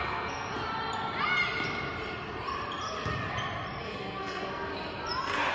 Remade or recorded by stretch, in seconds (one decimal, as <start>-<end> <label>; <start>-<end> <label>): 0.0-0.5 remade; 0.5-3.8 recorded; 3.8-4.7 remade; 4.7-5.5 recorded